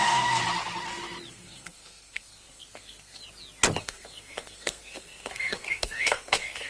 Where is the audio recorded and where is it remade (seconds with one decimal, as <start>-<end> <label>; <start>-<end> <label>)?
0.0-0.4 remade; 0.4-1.3 recorded; 1.3-3.2 remade; 3.2-3.8 recorded; 3.8-6.7 remade

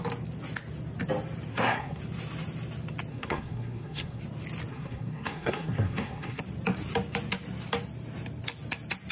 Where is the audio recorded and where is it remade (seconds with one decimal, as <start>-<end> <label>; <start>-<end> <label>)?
0.0-1.5 recorded; 1.5-2.0 remade; 2.0-3.1 recorded; 3.1-4.2 remade; 4.2-4.7 recorded; 4.7-6.4 remade; 6.4-9.1 recorded

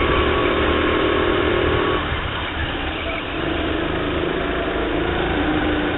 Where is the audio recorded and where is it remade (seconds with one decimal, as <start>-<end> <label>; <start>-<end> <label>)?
0.0-6.0 recorded

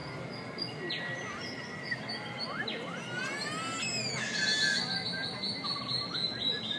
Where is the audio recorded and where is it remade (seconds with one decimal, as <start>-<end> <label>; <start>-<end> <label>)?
0.0-6.8 recorded

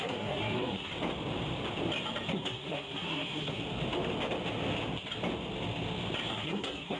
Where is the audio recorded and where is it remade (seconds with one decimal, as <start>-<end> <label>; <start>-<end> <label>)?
0.0-0.9 remade; 0.9-2.3 recorded; 2.3-3.6 remade; 3.6-6.3 recorded; 6.3-7.0 remade

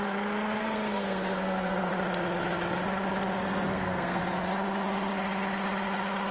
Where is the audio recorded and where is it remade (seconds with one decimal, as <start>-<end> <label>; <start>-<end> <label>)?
0.0-0.6 recorded; 0.6-1.9 remade; 1.9-3.4 recorded; 3.4-4.2 remade; 4.2-6.3 recorded